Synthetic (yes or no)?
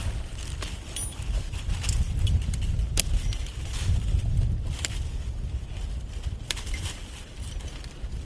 no